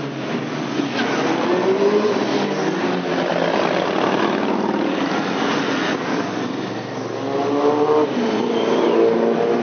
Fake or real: real